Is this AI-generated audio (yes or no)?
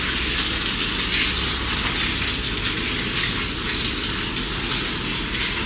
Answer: no